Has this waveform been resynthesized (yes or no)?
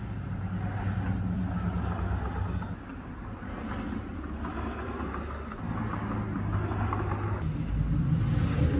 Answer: no